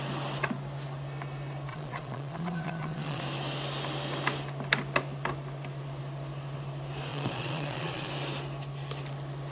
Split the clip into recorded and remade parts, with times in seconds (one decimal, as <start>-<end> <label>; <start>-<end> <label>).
0.0-1.7 recorded; 1.7-3.2 remade; 3.2-7.1 recorded; 7.1-8.1 remade; 8.1-9.5 recorded